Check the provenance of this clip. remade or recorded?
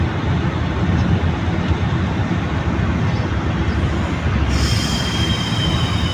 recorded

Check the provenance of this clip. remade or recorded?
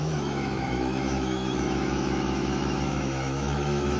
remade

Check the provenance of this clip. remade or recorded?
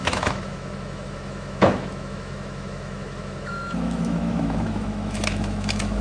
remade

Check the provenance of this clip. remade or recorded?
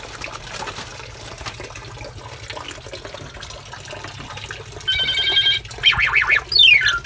recorded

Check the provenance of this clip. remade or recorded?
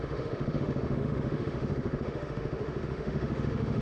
remade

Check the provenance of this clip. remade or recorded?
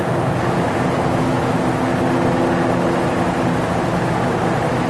recorded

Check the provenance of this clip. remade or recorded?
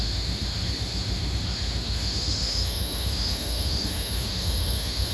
remade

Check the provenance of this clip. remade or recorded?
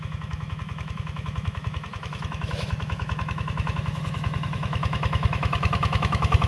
remade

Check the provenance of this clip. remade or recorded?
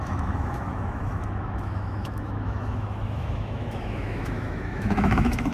remade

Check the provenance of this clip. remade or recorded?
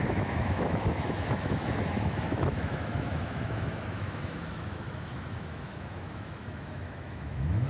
remade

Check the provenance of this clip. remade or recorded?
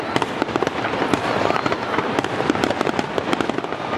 recorded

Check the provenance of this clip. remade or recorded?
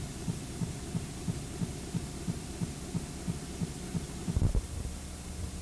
recorded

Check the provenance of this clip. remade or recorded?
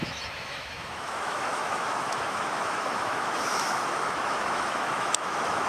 remade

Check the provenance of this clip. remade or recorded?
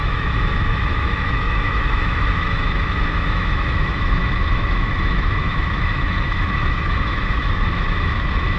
remade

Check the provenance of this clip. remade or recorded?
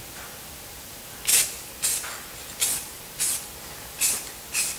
recorded